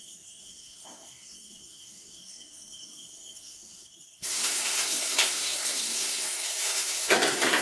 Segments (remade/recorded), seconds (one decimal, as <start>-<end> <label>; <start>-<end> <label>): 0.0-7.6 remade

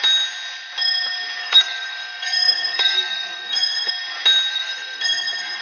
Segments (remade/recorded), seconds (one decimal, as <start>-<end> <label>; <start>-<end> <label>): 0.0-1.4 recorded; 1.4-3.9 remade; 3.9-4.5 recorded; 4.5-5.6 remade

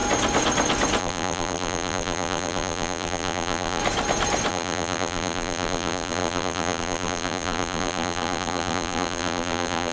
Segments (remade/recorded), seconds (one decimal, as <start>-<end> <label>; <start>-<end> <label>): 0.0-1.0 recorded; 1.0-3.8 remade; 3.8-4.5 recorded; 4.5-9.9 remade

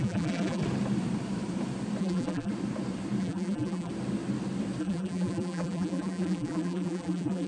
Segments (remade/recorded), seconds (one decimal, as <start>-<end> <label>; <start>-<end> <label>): 0.0-0.6 remade; 0.6-2.0 recorded; 2.0-2.5 remade; 2.5-3.2 recorded; 3.2-3.9 remade; 3.9-4.8 recorded; 4.8-7.5 remade